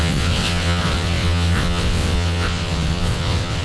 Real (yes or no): no